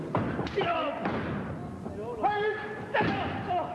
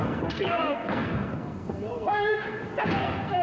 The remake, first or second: second